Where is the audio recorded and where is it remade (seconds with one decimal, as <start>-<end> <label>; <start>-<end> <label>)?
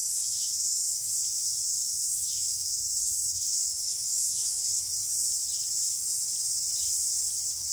0.0-1.1 remade; 1.1-1.7 recorded; 1.7-4.8 remade; 4.8-7.7 recorded